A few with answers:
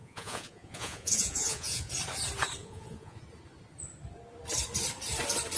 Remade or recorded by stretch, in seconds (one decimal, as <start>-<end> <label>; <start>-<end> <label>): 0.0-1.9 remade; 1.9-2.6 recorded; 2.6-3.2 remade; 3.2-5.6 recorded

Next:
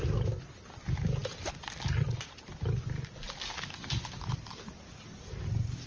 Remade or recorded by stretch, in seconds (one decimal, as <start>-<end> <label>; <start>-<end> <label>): 0.0-5.9 recorded

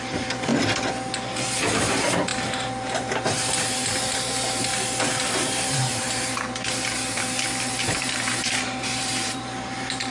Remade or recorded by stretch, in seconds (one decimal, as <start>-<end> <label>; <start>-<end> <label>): 0.0-0.5 remade; 0.5-1.9 recorded; 1.9-4.7 remade; 4.7-5.2 recorded; 5.2-10.1 remade

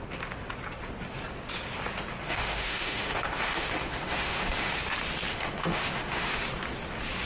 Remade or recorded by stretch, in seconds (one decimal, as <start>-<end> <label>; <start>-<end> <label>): 0.0-2.2 recorded; 2.2-4.8 remade; 4.8-5.3 recorded; 5.3-6.4 remade; 6.4-7.3 recorded

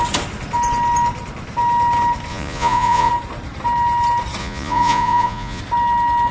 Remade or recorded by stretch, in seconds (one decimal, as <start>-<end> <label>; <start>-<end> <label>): 0.0-2.3 recorded; 2.3-3.1 remade; 3.1-4.4 recorded; 4.4-5.6 remade; 5.6-6.3 recorded